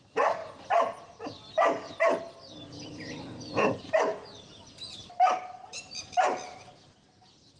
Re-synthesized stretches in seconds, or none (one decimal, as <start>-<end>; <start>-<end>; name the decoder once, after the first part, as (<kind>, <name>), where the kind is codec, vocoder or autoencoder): none